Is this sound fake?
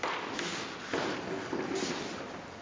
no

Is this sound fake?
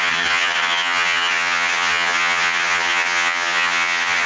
yes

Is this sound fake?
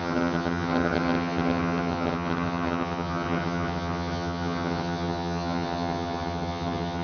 yes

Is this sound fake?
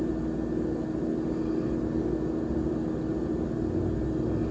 no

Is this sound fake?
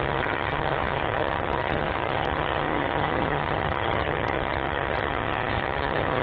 yes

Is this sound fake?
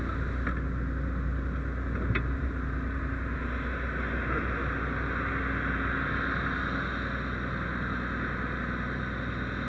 no